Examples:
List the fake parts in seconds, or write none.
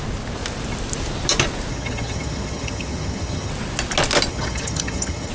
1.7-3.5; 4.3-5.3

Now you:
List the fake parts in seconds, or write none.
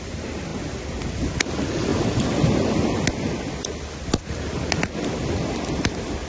none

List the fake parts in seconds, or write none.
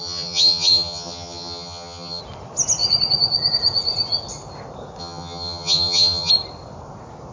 0.0-2.2; 5.0-6.3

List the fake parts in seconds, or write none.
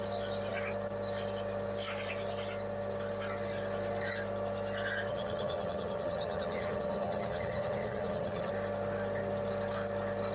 5.1-8.5